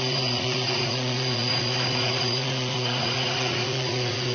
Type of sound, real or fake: fake